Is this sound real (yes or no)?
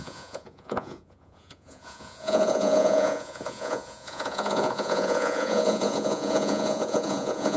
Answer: no